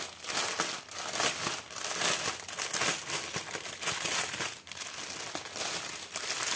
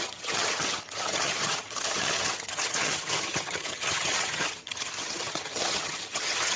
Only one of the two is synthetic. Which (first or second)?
second